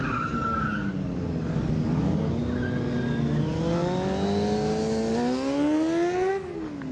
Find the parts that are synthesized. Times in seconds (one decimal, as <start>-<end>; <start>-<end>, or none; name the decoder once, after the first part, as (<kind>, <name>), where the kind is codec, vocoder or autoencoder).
0.0-0.9 (codec, DAC); 1.5-2.4; 6.3-6.9